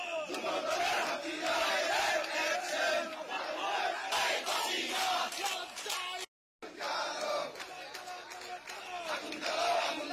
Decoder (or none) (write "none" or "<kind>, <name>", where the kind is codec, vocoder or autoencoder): none